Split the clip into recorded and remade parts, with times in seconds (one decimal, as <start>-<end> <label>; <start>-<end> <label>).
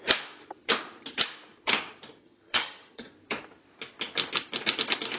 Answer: 0.0-2.2 recorded; 2.2-3.1 remade; 3.1-5.2 recorded